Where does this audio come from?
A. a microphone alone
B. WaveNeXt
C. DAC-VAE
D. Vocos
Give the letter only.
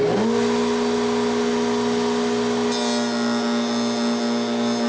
A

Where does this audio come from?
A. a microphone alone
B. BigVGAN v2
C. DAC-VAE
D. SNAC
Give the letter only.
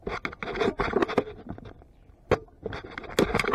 A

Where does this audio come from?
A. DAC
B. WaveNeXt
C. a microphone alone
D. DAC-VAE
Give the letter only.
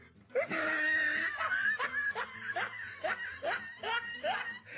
C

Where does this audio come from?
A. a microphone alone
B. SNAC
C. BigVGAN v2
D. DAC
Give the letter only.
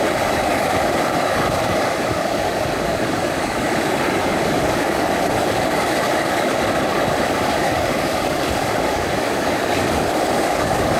D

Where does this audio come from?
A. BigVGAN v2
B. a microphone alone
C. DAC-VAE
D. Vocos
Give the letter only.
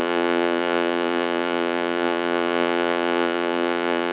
D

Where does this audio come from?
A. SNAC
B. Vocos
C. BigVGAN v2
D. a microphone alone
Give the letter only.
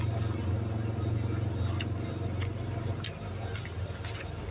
D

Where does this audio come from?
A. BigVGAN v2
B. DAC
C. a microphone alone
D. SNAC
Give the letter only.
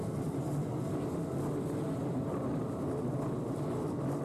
C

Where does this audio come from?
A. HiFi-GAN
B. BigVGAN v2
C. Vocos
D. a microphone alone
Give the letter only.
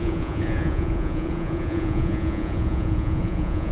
C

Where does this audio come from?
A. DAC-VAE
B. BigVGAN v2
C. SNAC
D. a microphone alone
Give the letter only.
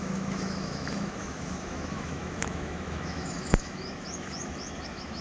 A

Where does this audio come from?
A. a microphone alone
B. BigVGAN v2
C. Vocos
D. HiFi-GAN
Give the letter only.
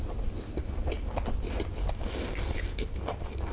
A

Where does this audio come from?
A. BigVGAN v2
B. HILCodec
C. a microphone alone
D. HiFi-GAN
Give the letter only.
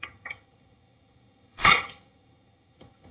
D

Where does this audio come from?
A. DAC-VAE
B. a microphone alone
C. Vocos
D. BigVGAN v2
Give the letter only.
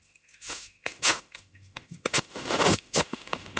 A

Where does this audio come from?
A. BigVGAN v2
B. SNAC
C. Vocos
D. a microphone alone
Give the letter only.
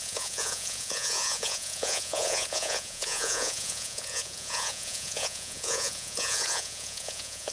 C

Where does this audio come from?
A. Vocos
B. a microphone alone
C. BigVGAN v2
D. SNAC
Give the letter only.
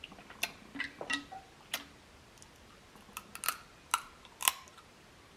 B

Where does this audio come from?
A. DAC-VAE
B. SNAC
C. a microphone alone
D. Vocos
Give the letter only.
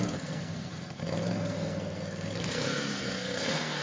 B